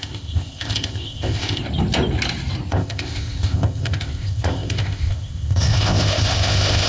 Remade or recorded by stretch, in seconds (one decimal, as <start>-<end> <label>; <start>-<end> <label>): 0.0-1.6 remade; 1.6-2.7 recorded; 2.7-6.9 remade